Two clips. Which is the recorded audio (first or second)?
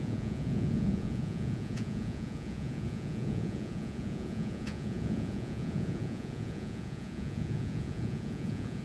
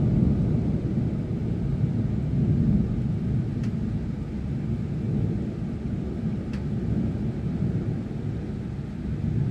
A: second